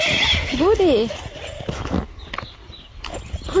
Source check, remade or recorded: recorded